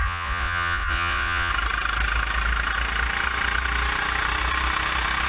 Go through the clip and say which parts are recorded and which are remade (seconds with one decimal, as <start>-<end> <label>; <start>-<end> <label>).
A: 0.0-1.5 remade; 1.5-5.3 recorded